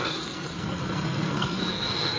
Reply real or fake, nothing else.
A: fake